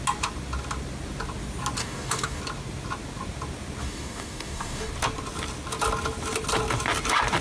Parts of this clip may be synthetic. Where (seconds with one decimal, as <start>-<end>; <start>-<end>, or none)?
1.8-2.4; 3.8-4.9